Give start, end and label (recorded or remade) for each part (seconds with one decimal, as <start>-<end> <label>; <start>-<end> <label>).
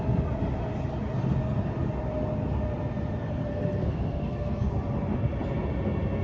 0.0-3.5 recorded; 3.5-4.7 remade; 4.7-6.2 recorded